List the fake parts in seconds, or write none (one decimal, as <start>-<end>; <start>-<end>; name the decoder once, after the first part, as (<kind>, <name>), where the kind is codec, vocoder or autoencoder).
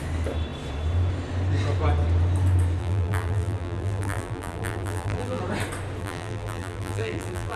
2.8-5.4 (vocoder, BigVGAN v2); 6.0-7.6